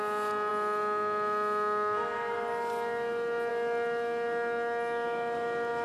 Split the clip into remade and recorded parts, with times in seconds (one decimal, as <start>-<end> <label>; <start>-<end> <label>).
0.0-5.8 recorded